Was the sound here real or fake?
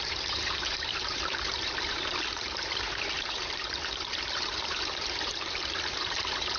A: fake